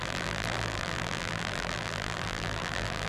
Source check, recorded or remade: remade